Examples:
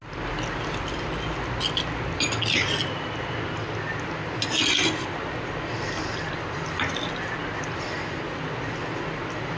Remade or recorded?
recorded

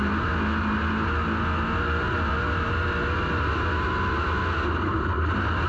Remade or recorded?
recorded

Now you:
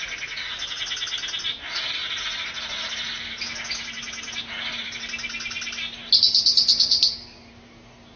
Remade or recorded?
recorded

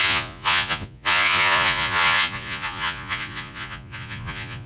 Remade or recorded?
remade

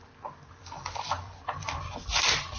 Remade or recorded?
remade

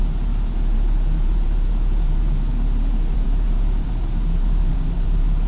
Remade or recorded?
remade